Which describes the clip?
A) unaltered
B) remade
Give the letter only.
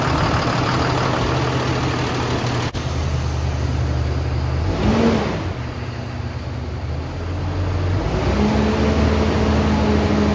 A